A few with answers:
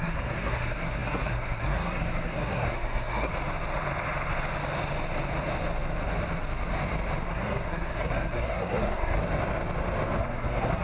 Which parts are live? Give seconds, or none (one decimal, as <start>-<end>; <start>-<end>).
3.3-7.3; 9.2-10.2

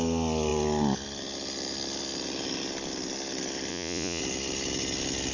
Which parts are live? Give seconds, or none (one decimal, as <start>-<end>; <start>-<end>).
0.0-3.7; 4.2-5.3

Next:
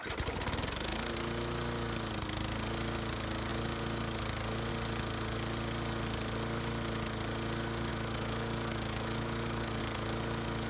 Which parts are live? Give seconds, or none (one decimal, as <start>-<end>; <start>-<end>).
0.0-7.9; 9.8-10.7

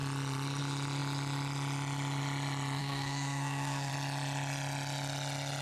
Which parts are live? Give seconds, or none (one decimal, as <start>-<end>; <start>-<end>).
0.0-2.8; 3.9-5.6

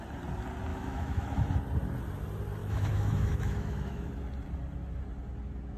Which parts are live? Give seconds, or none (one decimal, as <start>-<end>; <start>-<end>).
0.0-0.7; 1.4-2.6; 4.1-5.8

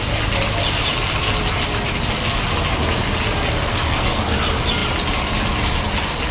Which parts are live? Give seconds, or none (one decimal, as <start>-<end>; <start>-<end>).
0.0-3.7; 4.2-6.3